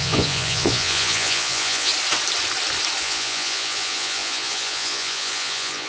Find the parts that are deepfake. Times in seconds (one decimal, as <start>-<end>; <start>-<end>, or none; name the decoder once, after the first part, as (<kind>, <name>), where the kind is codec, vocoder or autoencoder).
0.0-1.9 (vocoder, Vocos); 3.0-5.9